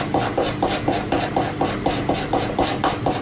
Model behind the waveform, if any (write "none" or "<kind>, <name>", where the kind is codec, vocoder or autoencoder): none